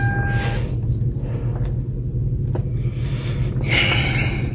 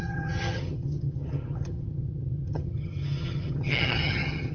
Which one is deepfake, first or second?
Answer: second